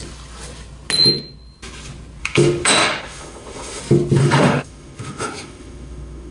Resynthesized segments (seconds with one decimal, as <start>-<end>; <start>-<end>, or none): 2.2-3.8; 4.2-6.3